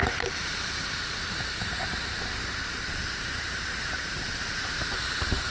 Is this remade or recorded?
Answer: remade